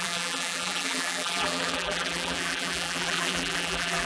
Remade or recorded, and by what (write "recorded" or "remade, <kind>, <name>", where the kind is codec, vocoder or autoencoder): remade, vocoder, BigVGAN v2